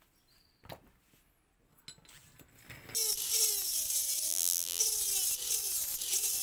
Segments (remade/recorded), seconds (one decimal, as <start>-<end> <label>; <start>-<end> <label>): 0.0-4.3 recorded; 4.3-4.8 remade; 4.8-6.4 recorded